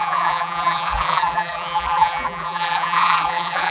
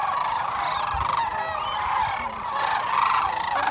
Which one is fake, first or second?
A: first